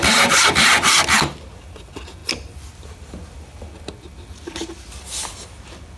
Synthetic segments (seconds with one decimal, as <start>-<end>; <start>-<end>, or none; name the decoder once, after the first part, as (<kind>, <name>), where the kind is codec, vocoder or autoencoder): none